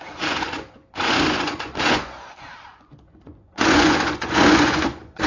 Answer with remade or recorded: remade